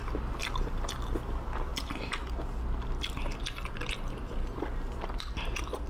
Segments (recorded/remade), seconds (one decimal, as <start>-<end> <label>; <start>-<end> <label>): 0.0-5.9 recorded